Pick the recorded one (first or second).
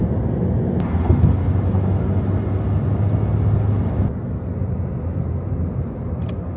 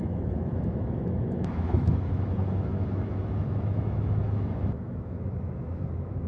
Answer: first